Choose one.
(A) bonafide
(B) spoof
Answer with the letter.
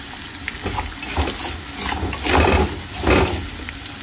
A